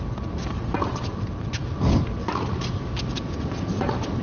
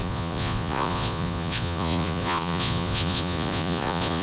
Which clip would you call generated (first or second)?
second